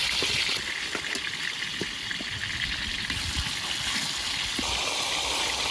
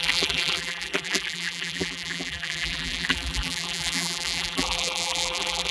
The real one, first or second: first